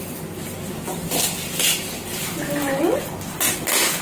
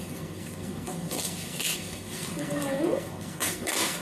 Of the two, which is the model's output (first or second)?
second